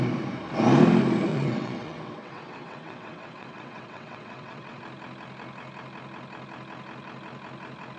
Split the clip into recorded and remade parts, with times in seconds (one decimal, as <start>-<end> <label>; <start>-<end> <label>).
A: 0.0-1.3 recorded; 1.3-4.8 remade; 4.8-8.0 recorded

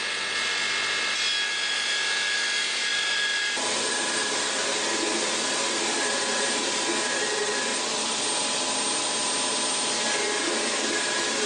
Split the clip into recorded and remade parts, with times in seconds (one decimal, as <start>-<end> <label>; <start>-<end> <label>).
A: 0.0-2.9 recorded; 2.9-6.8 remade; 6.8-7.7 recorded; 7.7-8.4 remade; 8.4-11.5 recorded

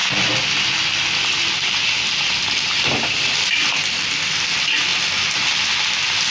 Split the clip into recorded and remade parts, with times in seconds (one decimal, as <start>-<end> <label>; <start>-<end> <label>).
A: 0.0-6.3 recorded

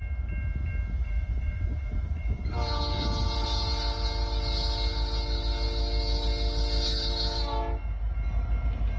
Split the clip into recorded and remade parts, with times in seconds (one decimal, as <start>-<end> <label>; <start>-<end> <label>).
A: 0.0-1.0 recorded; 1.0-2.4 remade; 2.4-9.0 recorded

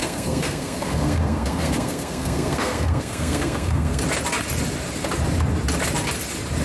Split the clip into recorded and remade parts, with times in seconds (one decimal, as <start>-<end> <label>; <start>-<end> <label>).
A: 0.0-4.0 remade; 4.0-6.6 recorded

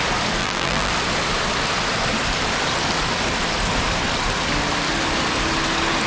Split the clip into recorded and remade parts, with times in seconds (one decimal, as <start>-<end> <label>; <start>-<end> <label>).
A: 0.0-0.4 recorded; 0.4-0.9 remade; 0.9-6.1 recorded